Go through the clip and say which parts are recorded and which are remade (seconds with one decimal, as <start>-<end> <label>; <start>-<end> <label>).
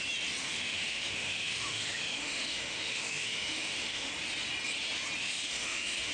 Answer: 0.0-0.4 recorded; 0.4-4.1 remade; 4.1-5.2 recorded; 5.2-6.1 remade